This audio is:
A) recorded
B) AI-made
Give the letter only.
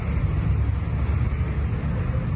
A